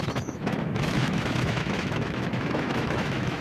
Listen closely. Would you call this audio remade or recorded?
remade